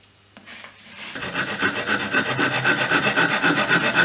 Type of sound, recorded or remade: recorded